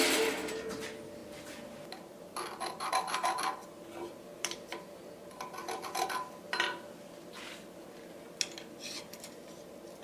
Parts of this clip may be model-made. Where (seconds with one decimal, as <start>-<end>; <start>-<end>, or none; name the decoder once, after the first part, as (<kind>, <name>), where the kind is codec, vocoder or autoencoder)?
none